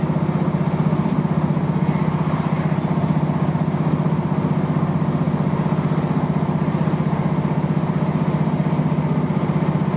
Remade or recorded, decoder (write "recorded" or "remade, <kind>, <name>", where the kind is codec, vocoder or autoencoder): recorded